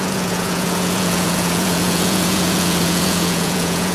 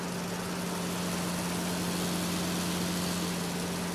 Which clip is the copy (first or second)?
first